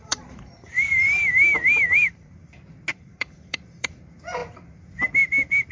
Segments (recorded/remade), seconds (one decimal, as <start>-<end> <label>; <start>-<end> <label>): 0.0-2.5 remade; 2.5-2.9 recorded; 2.9-4.0 remade; 4.0-5.7 recorded